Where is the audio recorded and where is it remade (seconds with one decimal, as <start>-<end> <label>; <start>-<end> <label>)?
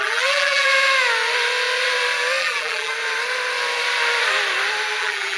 0.0-0.7 remade; 0.7-2.4 recorded; 2.4-2.9 remade; 2.9-5.0 recorded; 5.0-5.4 remade